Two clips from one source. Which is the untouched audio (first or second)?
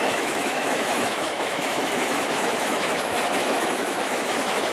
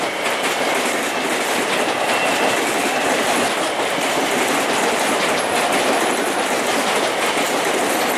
second